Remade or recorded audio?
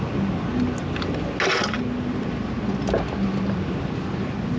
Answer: recorded